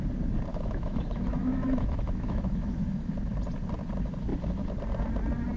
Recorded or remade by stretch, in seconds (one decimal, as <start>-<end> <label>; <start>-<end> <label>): 0.0-0.5 recorded; 0.5-3.1 remade; 3.1-5.6 recorded